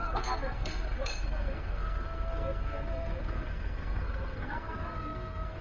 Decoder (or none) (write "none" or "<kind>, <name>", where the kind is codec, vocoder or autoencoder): codec, SNAC